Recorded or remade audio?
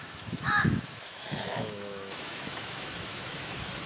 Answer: remade